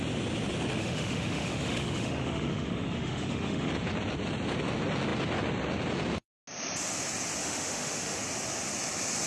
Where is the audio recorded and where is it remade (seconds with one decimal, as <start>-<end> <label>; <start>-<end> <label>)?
0.0-0.8 recorded; 0.8-3.7 remade; 3.7-7.4 recorded; 7.4-8.2 remade; 8.2-9.3 recorded

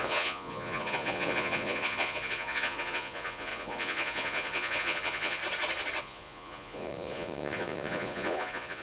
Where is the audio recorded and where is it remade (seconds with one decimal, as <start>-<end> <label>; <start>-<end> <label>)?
0.0-5.4 remade; 5.4-6.0 recorded; 6.0-8.8 remade

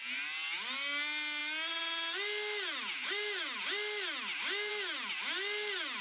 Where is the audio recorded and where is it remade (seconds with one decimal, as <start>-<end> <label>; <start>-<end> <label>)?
0.0-6.0 recorded

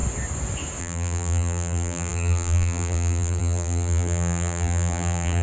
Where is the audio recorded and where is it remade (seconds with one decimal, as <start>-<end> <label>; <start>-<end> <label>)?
0.0-0.8 recorded; 0.8-5.4 remade

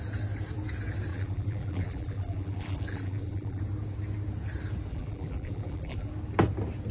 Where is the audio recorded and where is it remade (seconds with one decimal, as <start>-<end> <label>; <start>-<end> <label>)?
0.0-1.1 recorded; 1.1-3.6 remade; 3.6-4.9 recorded; 4.9-6.1 remade; 6.1-6.9 recorded

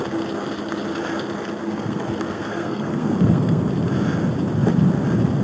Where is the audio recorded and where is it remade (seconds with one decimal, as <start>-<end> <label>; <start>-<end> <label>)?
0.0-1.6 recorded; 1.6-3.6 remade; 3.6-5.4 recorded

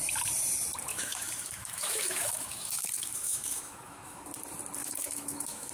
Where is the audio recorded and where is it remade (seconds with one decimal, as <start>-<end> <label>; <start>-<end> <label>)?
0.0-0.9 recorded; 0.9-4.3 remade; 4.3-4.8 recorded; 4.8-5.7 remade

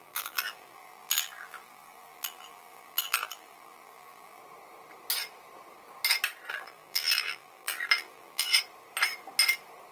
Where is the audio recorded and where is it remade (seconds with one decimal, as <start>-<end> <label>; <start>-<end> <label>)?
0.0-4.4 remade; 4.4-6.5 recorded; 6.5-8.5 remade; 8.5-9.9 recorded